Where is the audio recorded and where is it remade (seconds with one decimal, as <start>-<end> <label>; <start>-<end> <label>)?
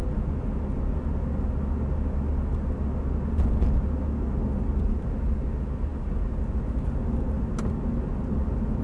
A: 0.0-8.8 recorded